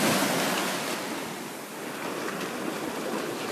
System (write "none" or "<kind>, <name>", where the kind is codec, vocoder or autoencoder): none